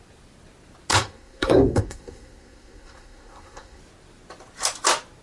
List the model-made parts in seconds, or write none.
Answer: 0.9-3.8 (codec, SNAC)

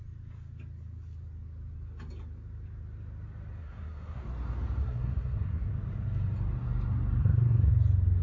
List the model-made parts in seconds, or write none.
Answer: 3.6-4.2 (codec, SNAC); 4.8-5.7; 7.2-7.7

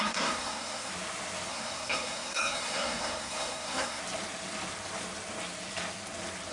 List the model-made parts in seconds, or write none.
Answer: 0.0-0.9 (codec, SNAC); 1.5-4.0